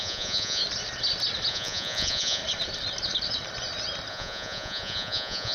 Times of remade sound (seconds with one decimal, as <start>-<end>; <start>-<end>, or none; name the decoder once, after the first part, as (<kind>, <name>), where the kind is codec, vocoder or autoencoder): 0.0-0.6 (vocoder, Vocos); 1.5-2.4; 4.1-5.5